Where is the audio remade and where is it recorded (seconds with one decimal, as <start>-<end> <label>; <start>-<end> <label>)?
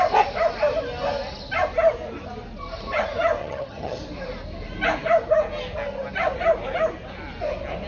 0.0-3.4 recorded; 3.4-4.0 remade; 4.0-7.9 recorded